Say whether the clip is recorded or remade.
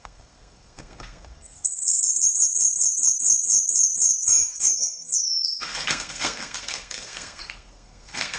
remade